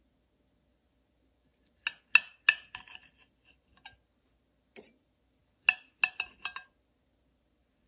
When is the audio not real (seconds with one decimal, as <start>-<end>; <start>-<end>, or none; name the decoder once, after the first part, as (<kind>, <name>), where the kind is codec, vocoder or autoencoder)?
none